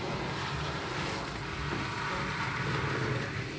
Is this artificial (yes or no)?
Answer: yes